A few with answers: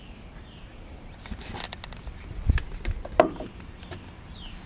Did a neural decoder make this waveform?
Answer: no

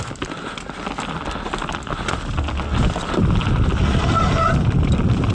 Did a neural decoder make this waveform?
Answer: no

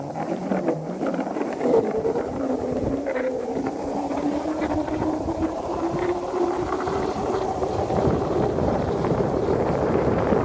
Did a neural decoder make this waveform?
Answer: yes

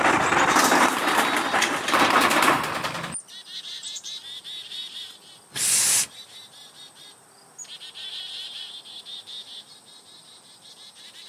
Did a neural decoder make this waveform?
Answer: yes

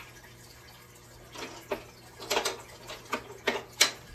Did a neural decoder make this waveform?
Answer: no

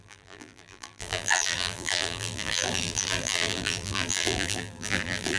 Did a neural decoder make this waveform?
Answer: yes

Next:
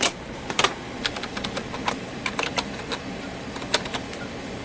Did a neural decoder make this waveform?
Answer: yes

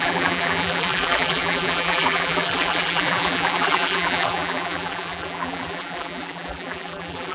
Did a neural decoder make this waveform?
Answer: yes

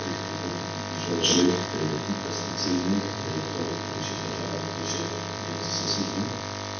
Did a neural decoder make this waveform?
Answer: yes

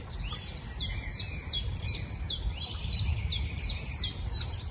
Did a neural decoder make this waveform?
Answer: no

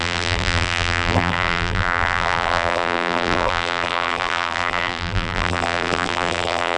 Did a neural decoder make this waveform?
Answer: yes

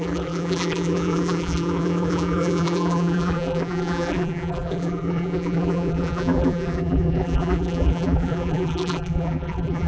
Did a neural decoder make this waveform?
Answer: yes